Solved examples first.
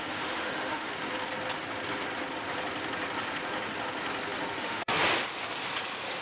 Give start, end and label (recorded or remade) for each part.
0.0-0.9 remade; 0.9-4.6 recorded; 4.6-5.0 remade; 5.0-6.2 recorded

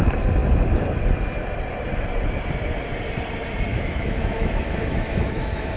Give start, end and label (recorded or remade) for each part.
0.0-3.7 recorded; 3.7-5.8 remade